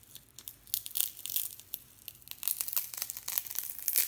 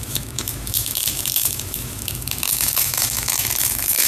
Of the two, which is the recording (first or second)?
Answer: first